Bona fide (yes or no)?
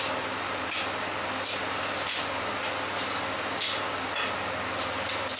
yes